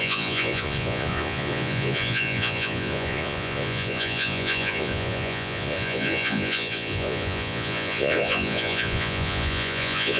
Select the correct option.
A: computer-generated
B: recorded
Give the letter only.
A